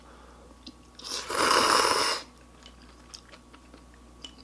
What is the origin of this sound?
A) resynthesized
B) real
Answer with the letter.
B